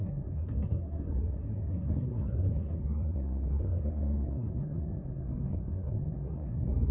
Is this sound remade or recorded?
remade